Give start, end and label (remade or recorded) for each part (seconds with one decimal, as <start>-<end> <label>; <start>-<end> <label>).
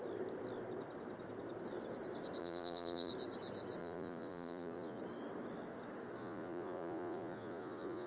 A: 0.0-2.4 recorded; 2.4-3.1 remade; 3.1-3.8 recorded; 3.8-5.0 remade; 5.0-6.2 recorded; 6.2-8.1 remade